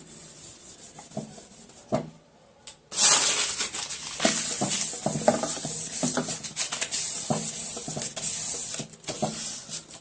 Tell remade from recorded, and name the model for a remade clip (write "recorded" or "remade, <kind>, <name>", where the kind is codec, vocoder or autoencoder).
recorded